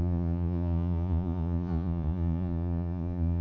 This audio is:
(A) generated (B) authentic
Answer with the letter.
A